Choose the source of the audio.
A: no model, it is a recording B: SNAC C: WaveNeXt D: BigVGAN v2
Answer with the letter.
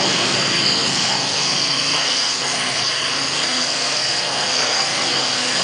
B